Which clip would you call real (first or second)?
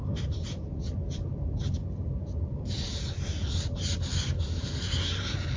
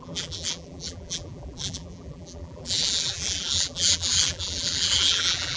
first